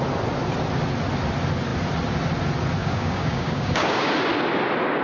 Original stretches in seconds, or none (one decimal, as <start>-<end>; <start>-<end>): 0.0-2.8; 4.1-5.0

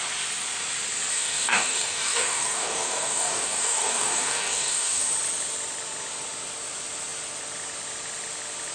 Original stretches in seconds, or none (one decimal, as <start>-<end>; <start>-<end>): 0.0-1.1; 5.1-8.7